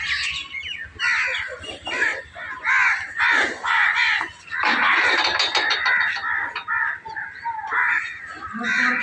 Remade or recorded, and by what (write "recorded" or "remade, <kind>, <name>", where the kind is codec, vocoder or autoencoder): recorded